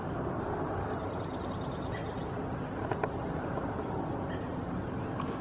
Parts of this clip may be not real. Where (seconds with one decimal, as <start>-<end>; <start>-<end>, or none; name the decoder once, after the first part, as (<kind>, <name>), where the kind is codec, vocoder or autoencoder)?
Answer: none